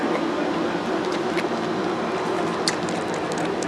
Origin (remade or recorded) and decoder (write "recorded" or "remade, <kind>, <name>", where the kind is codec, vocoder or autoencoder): recorded